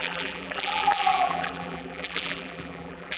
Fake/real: fake